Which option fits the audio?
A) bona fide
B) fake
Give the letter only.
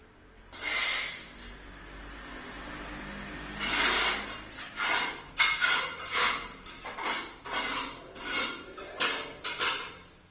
A